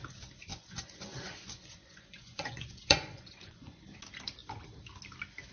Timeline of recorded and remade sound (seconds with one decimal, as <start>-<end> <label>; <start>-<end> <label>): 0.0-0.5 recorded; 0.5-3.8 remade; 3.8-5.5 recorded

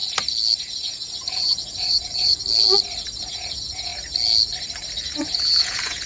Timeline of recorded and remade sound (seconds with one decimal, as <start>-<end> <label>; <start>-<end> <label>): 0.0-0.6 recorded; 0.6-2.4 remade; 2.4-3.3 recorded; 3.3-3.9 remade; 3.9-5.1 recorded; 5.1-6.1 remade

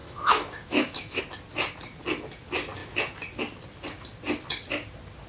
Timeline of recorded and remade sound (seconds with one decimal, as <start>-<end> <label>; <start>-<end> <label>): 0.0-1.2 remade; 1.2-5.3 recorded

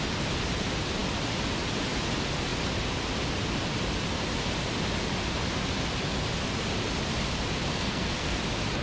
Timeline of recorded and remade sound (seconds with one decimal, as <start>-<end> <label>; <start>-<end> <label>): 0.0-7.7 recorded; 7.7-8.4 remade; 8.4-8.8 recorded

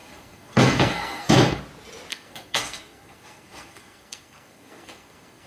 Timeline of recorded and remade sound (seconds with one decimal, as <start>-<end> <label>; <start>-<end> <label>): 0.0-1.6 remade; 1.6-2.1 recorded; 2.1-5.5 remade

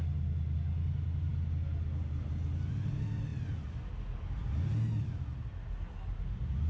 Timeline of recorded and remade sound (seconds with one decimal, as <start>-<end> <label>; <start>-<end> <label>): 0.0-6.7 recorded